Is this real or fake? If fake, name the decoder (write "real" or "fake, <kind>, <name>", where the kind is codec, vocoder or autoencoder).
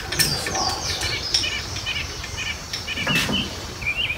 real